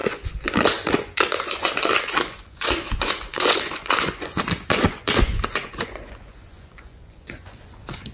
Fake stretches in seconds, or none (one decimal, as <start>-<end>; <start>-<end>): 0.0-8.1